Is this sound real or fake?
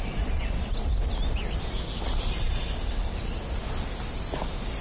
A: real